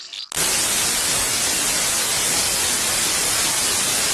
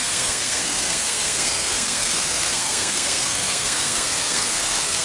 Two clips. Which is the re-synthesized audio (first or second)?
second